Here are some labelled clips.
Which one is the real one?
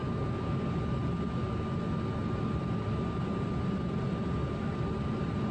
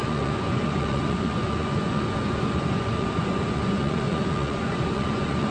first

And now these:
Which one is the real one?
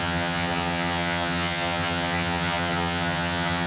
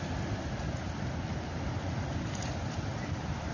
second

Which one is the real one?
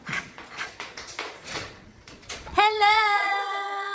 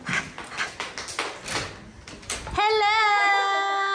second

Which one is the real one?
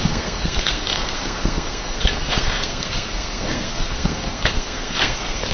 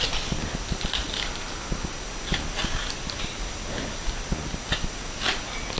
second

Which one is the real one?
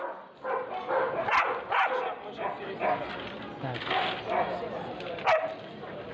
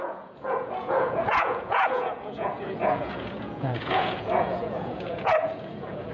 first